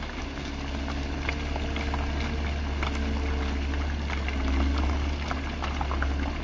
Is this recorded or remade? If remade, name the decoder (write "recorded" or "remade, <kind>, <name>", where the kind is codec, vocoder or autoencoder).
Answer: recorded